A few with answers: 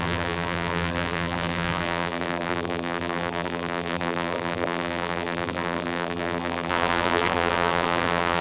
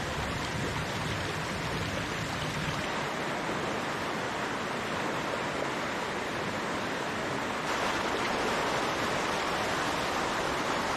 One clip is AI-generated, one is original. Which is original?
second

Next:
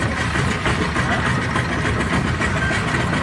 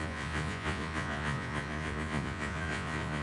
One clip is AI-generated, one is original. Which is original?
first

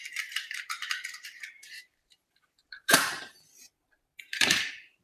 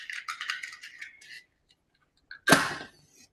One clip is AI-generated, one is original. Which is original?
second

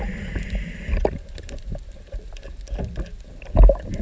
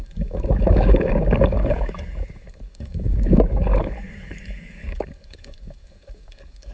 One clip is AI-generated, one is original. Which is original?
first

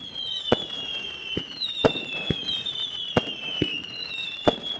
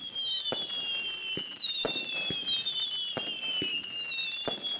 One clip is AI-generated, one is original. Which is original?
second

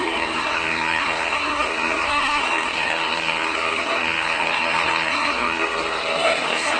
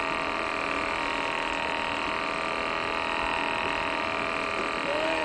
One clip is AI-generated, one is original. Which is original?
second